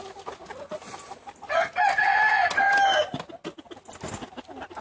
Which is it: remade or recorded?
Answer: recorded